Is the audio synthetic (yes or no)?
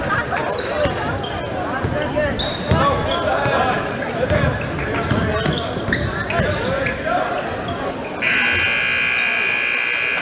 no